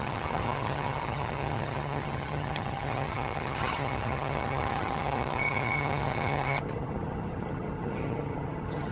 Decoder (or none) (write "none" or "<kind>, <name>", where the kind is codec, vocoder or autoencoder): vocoder, HiFi-GAN